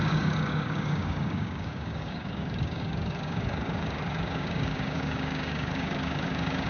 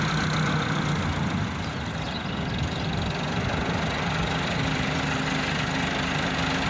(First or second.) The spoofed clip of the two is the first